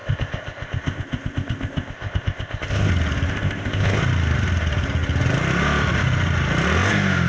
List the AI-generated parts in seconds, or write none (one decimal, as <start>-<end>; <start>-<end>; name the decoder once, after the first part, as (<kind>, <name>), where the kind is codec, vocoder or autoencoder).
0.0-2.9 (codec, ZipCodec); 3.3-4.0